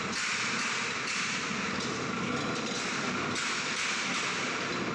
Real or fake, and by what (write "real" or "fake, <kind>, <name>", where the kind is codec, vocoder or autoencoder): real